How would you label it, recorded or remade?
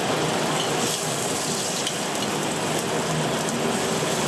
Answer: recorded